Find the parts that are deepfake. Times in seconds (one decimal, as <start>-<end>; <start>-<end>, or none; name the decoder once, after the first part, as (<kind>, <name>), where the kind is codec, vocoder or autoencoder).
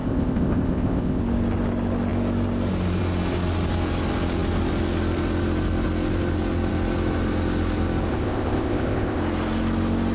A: 0.0-1.2 (codec, ZipCodec); 8.1-9.2